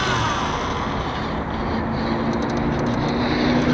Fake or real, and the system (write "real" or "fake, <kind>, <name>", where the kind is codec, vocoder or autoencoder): real